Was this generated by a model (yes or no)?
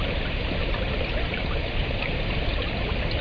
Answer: yes